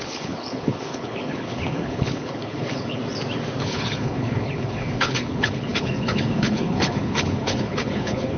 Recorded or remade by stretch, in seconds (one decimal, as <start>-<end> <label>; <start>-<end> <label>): 0.0-3.0 remade; 3.0-3.6 recorded; 3.6-8.4 remade